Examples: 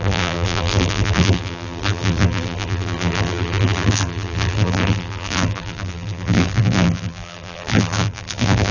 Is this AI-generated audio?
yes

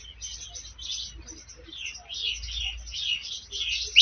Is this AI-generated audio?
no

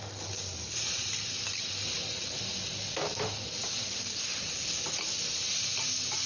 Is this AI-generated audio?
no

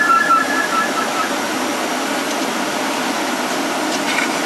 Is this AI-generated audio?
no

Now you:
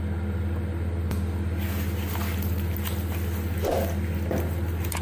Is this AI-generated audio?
no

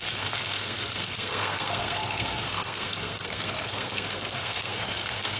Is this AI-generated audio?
yes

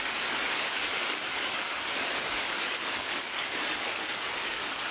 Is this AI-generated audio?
yes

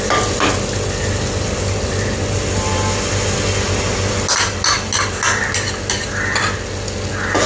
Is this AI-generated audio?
no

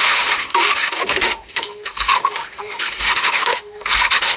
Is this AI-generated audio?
yes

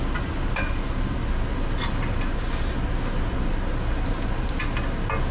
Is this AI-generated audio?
no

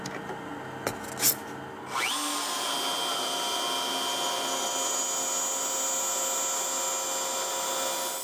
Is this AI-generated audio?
no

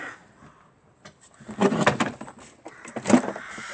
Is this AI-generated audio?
no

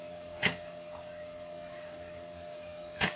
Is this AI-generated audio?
yes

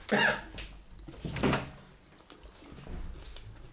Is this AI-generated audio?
no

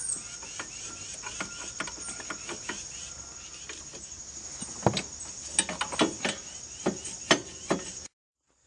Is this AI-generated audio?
no